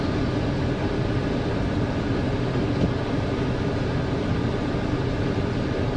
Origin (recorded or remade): recorded